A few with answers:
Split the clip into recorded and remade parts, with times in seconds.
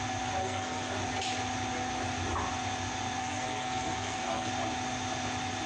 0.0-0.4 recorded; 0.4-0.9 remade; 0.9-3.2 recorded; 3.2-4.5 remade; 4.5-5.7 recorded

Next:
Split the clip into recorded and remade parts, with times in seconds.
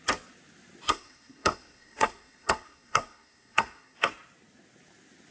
0.0-0.9 recorded; 0.9-4.1 remade; 4.1-5.3 recorded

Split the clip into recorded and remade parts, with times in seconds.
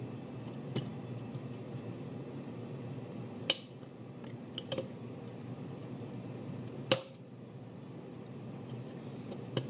0.0-9.7 recorded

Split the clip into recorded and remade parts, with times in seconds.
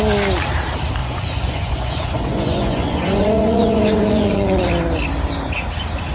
0.0-1.0 recorded; 1.0-4.7 remade; 4.7-6.1 recorded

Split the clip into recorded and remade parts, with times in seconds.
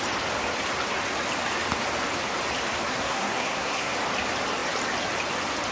0.0-2.9 recorded; 2.9-3.9 remade; 3.9-5.7 recorded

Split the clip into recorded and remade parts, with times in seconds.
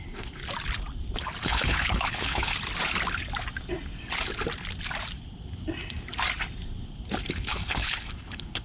0.0-0.4 remade; 0.4-1.4 recorded; 1.4-2.5 remade; 2.5-7.3 recorded; 7.3-8.6 remade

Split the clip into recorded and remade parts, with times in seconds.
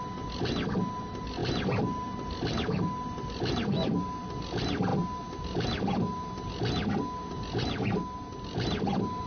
0.0-9.3 recorded